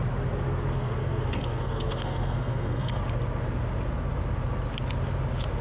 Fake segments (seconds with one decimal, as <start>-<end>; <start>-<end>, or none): 0.7-3.0